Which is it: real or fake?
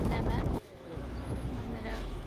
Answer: fake